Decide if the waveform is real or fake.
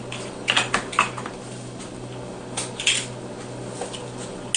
real